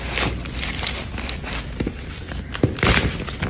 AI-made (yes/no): no